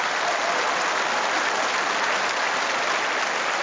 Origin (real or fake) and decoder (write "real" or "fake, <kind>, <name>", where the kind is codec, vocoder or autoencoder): real